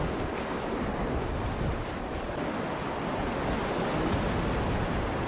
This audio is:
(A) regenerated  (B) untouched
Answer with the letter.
B